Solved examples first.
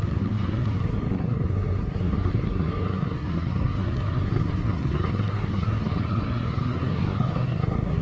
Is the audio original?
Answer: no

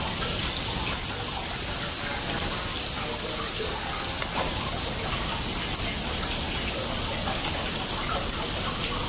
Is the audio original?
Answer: yes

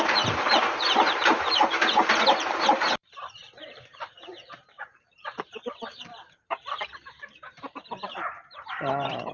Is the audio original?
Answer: no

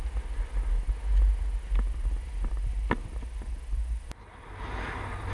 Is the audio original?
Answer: yes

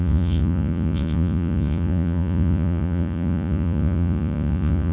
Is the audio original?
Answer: no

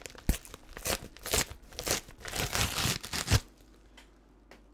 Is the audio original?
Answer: yes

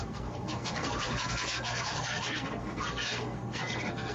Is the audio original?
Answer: no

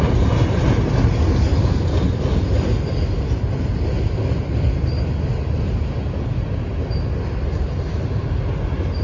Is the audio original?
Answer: yes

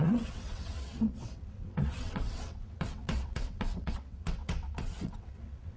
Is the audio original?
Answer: no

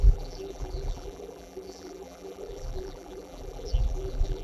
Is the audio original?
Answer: no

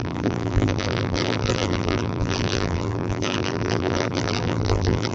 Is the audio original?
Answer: no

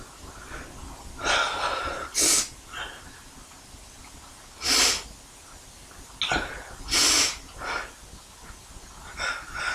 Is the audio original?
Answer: yes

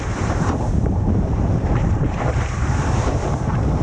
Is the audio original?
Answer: no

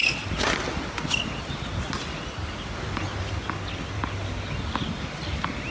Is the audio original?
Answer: yes